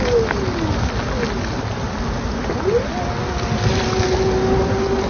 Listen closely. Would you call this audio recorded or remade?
recorded